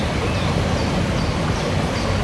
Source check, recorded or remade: recorded